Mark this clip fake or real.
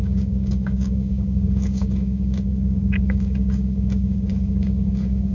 fake